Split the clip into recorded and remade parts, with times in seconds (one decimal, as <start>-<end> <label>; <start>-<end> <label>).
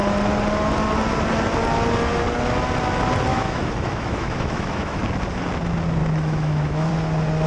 0.0-3.3 recorded; 3.3-5.0 remade; 5.0-6.0 recorded; 6.0-6.9 remade; 6.9-7.5 recorded